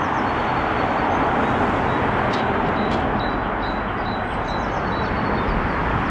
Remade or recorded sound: recorded